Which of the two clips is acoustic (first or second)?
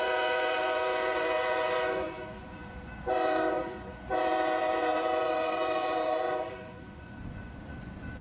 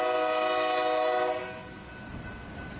second